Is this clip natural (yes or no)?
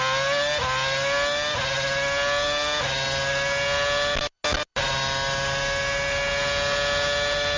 yes